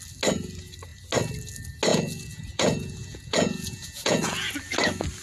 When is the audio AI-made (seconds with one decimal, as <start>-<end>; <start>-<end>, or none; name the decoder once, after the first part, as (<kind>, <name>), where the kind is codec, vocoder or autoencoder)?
1.9-4.5 (vocoder, Vocos)